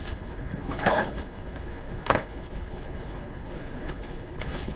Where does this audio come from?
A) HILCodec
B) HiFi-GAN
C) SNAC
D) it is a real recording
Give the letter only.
A